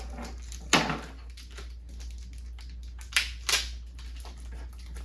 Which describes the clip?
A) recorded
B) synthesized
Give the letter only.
A